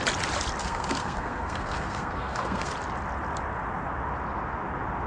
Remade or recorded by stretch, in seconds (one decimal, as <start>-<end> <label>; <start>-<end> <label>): 0.0-0.6 recorded; 0.6-2.7 remade; 2.7-5.1 recorded